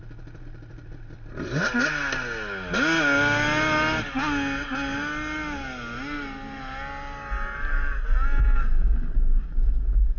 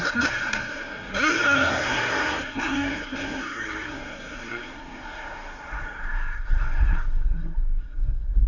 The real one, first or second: first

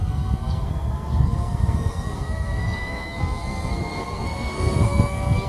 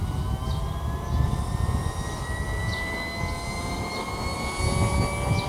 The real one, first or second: second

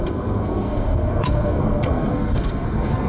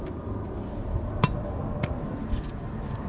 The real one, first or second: second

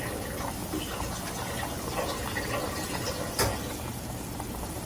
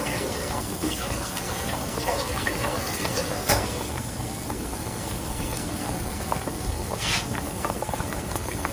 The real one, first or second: first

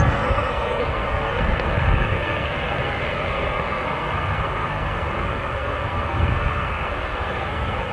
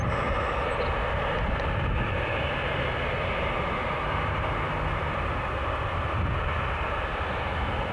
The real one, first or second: second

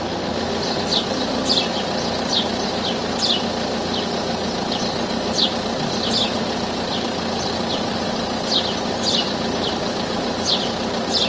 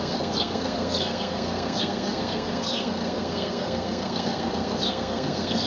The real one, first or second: first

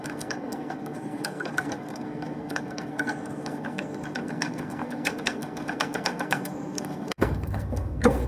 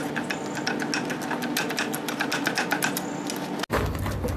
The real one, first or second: second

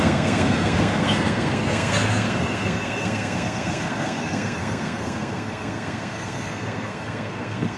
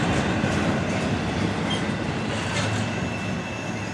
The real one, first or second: second